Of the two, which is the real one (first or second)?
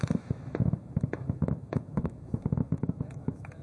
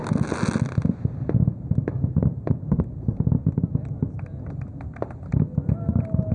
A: second